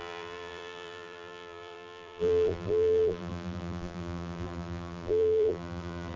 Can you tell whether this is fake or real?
fake